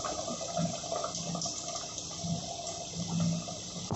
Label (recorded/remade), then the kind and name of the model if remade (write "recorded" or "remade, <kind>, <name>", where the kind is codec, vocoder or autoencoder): recorded